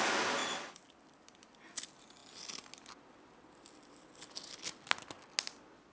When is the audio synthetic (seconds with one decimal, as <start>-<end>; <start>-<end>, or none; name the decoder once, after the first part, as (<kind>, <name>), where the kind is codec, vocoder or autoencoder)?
none